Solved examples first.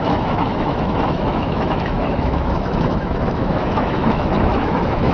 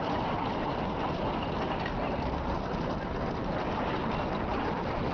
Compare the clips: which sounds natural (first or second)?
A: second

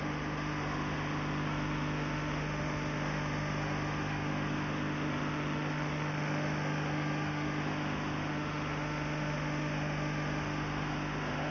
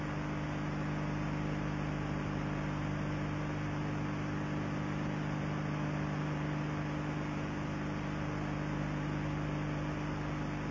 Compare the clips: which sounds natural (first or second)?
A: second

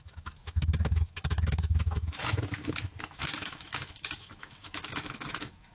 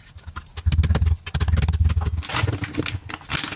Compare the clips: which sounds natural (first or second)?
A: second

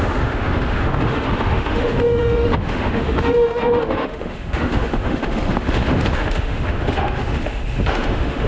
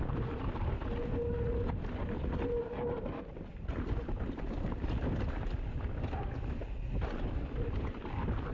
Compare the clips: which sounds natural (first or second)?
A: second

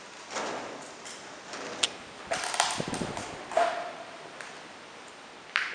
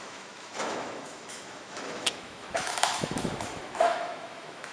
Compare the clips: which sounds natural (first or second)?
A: first